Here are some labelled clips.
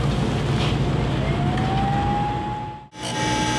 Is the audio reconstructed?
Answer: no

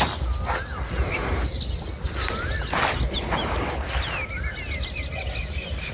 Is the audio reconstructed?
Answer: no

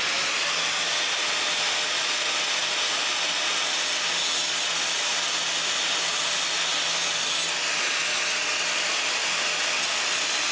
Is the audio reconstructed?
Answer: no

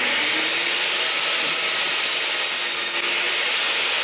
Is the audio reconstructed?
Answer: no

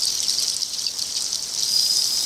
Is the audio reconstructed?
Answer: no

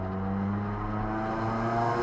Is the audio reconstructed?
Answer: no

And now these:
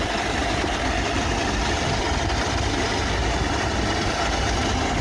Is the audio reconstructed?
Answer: no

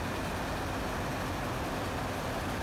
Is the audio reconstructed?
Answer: no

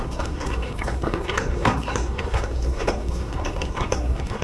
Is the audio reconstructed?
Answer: yes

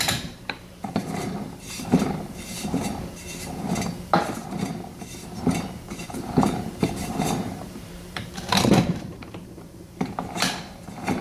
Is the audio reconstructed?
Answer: yes